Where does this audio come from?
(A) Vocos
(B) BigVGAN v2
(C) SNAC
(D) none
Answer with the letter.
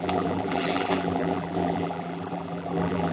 B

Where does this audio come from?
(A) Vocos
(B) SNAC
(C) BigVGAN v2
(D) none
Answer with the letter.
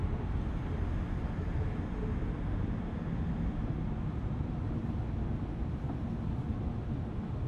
D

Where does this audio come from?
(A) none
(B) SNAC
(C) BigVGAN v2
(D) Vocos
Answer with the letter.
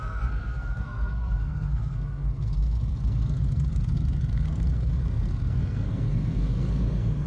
B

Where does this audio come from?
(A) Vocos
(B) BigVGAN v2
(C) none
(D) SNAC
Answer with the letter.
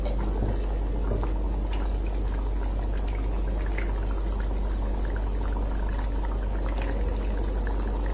C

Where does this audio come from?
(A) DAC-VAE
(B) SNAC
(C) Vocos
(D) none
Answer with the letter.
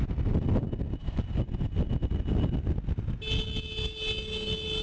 D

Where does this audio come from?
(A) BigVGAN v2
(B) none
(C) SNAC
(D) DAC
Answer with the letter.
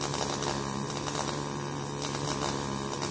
B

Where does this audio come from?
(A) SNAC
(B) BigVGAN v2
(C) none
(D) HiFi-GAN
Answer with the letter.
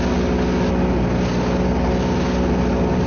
C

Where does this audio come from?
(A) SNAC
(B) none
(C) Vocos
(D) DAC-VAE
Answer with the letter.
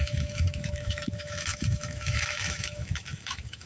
D